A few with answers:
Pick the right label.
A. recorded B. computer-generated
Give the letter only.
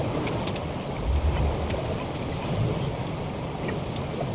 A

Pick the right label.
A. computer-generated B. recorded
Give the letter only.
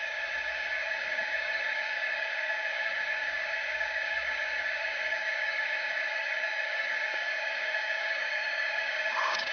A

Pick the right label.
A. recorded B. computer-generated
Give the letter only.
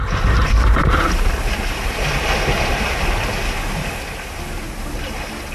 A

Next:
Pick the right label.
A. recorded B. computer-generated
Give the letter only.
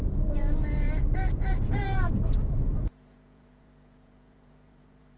B